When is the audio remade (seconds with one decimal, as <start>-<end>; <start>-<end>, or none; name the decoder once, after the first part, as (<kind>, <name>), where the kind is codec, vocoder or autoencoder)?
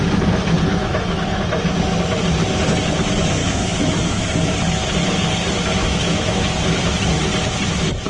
0.8-1.4 (autoencoder, DAC-VAE); 3.4-4.2; 5.8-6.5